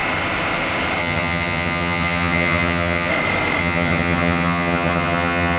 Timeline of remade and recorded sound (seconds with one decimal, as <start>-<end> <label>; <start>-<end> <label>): 0.0-1.0 recorded; 1.0-3.1 remade; 3.1-3.6 recorded; 3.6-5.6 remade